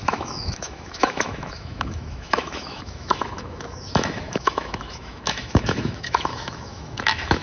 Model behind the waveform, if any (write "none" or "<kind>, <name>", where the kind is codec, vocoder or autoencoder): autoencoder, DAC-VAE